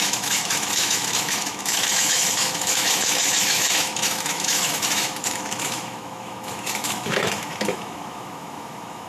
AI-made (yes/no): yes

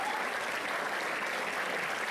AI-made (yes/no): no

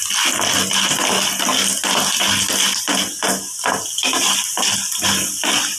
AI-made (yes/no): no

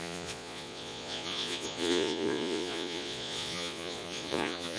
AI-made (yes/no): yes